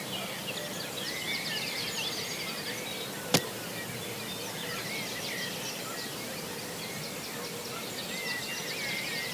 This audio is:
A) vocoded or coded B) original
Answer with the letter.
B